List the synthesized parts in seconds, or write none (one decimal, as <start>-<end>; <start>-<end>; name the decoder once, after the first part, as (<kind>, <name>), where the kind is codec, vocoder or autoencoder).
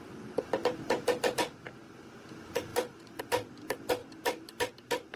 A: 2.7-3.2 (vocoder, BigVGAN v2)